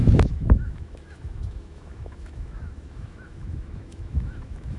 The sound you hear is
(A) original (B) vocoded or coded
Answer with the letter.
B